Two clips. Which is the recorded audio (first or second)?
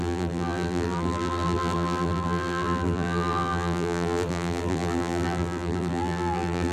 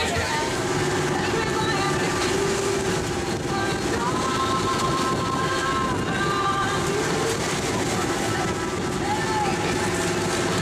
second